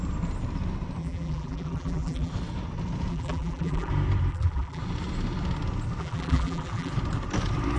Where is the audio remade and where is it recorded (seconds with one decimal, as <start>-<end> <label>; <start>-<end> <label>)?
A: 0.0-1.0 recorded; 1.0-2.3 remade; 2.3-3.1 recorded; 3.1-3.9 remade; 3.9-4.3 recorded; 4.3-4.8 remade; 4.8-6.0 recorded; 6.0-6.9 remade; 6.9-7.8 recorded